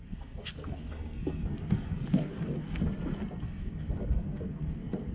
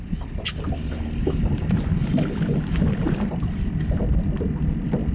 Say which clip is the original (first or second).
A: second